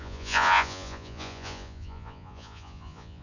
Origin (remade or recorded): remade